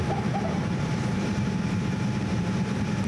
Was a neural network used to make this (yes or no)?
yes